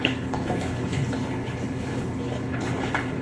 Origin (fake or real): fake